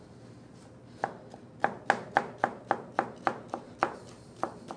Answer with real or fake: real